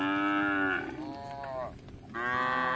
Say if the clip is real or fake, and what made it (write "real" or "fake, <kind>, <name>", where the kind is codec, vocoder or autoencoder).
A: real